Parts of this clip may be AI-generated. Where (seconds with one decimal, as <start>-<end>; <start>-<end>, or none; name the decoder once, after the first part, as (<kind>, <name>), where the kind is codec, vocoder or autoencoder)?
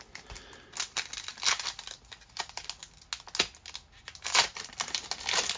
none